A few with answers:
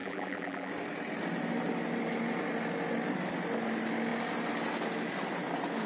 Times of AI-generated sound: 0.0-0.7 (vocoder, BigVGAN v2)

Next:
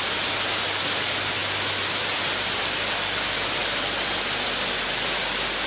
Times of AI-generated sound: none